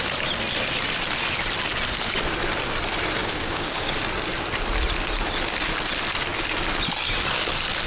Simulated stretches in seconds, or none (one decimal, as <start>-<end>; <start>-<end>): 3.2-3.9